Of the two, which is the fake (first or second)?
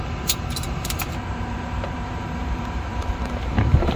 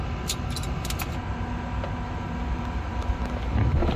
first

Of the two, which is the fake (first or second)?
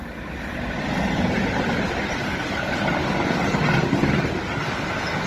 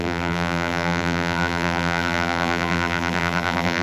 second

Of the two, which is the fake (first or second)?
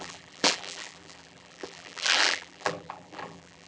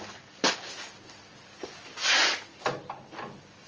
first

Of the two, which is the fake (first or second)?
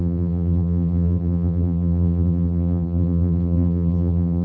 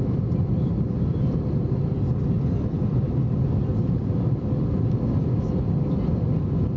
first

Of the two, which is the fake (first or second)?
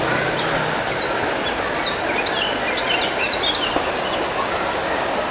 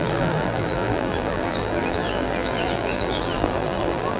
second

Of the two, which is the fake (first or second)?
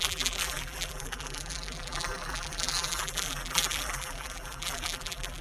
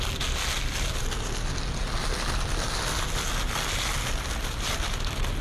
first